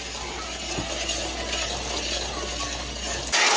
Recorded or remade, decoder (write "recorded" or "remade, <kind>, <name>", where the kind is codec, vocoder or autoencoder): recorded